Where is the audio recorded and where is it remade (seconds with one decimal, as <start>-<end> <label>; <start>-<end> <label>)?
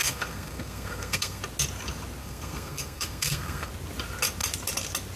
0.0-1.4 remade; 1.4-2.2 recorded; 2.2-3.7 remade; 3.7-5.2 recorded